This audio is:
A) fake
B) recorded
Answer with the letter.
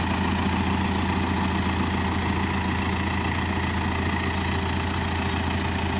B